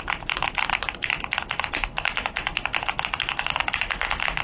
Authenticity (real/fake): real